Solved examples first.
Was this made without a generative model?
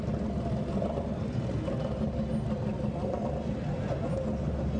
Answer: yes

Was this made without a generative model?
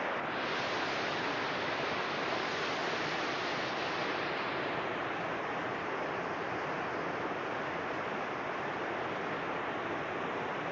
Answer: yes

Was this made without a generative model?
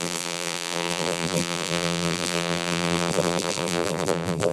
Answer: no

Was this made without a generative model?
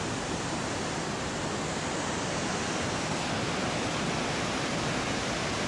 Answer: yes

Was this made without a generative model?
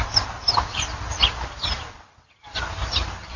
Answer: yes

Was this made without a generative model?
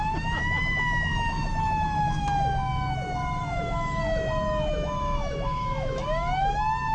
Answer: no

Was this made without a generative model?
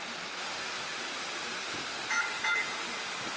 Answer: yes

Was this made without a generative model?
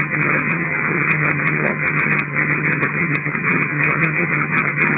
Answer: no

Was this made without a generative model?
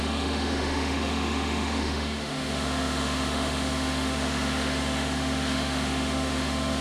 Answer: no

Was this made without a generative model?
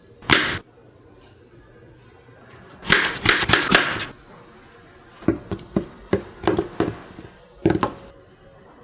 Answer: yes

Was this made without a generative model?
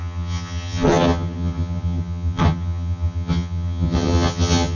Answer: no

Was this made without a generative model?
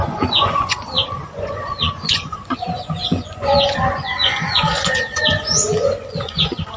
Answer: no